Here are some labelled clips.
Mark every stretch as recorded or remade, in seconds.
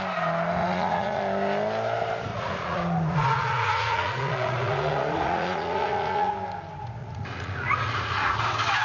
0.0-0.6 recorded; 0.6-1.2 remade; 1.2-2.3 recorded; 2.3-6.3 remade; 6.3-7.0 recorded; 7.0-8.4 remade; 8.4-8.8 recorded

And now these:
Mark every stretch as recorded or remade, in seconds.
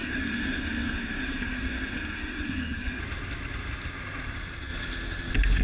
0.0-3.0 remade; 3.0-5.6 recorded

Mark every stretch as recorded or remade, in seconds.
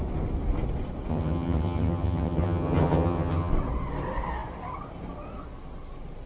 0.0-1.1 recorded; 1.1-3.5 remade; 3.5-6.3 recorded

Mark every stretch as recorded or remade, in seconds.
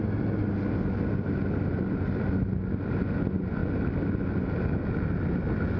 0.0-5.8 recorded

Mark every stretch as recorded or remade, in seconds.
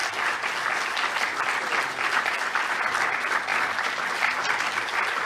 0.0-5.3 recorded